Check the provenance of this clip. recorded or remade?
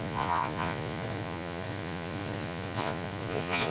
remade